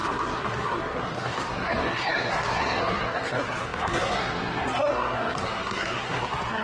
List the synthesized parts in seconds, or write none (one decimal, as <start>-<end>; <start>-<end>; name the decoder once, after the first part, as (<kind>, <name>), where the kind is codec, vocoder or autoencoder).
0.0-6.6 (codec, SNAC)